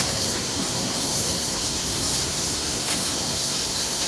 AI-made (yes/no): yes